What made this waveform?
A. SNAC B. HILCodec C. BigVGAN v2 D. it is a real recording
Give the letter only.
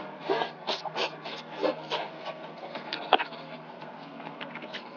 A